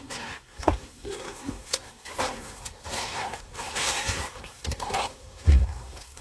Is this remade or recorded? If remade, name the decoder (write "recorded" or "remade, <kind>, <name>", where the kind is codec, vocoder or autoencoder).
remade, codec, SNAC